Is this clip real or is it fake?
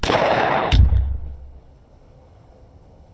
fake